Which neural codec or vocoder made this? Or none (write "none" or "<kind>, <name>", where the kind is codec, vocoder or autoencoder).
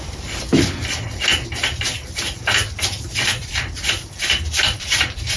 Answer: vocoder, BigVGAN v2